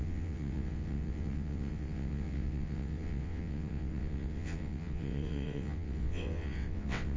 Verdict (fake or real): fake